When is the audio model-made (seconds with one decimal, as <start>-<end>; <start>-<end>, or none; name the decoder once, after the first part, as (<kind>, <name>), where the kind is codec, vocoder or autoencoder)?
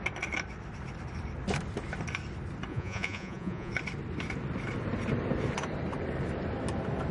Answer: 2.7-3.7 (vocoder, Vocos)